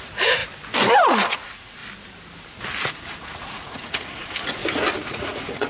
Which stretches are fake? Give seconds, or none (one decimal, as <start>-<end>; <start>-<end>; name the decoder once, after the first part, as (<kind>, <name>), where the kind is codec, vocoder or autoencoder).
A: 0.0-0.4 (vocoder, Vocos); 1.0-1.8; 2.9-4.6; 5.1-5.7